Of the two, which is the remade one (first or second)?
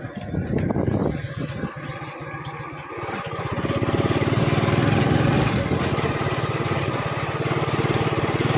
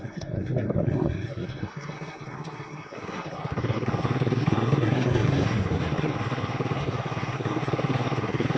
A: second